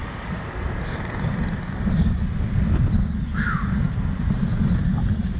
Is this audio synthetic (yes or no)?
no